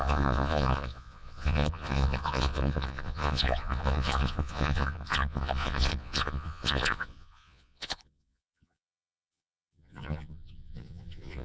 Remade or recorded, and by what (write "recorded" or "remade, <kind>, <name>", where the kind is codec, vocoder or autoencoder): remade, vocoder, Vocos